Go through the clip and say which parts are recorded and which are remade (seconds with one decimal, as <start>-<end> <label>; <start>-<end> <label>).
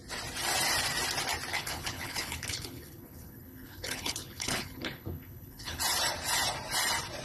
0.0-1.5 recorded; 1.5-5.8 remade; 5.8-7.2 recorded